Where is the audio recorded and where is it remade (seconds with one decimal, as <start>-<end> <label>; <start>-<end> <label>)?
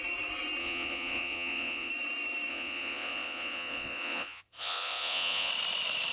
0.0-0.6 recorded; 0.6-1.9 remade; 1.9-2.5 recorded; 2.5-5.5 remade; 5.5-6.1 recorded